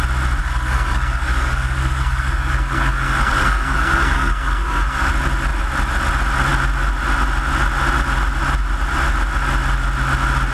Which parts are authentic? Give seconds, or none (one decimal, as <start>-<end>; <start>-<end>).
0.0-0.4; 5.1-10.5